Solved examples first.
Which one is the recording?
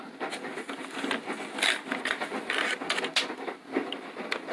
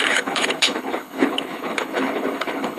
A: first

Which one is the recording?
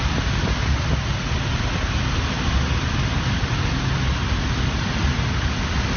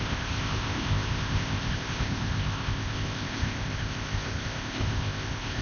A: first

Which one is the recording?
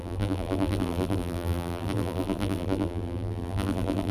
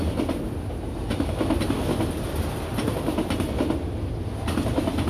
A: second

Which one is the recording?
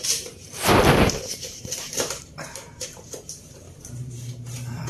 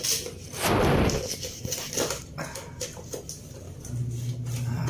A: second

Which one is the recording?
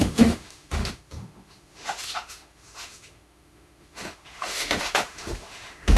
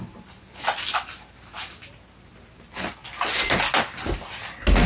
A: second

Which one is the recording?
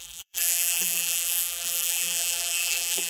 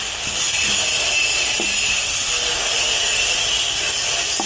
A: second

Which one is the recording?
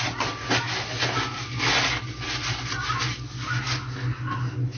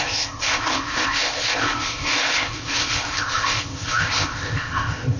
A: first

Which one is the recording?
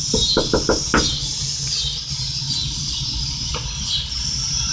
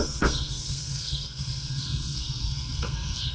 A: first